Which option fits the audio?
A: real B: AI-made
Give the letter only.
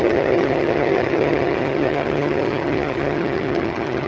B